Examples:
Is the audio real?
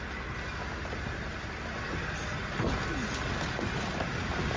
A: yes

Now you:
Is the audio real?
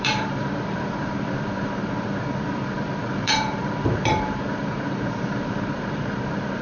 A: no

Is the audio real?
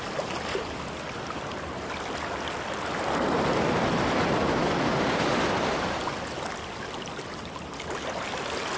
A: yes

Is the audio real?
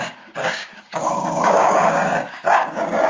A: no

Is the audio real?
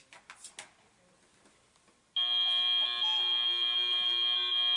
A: yes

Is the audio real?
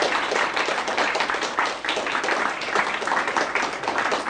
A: yes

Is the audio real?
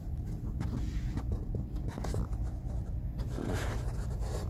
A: no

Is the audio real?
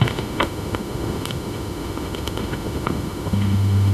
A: no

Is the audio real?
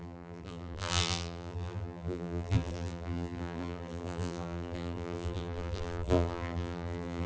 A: no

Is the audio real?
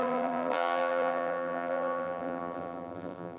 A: no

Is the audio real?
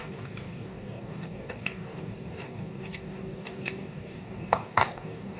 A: no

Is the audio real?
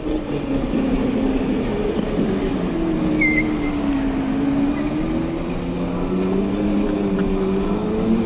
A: yes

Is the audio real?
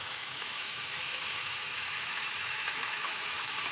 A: no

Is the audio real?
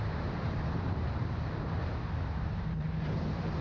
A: no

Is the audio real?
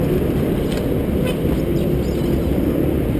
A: yes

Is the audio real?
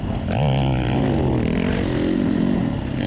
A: yes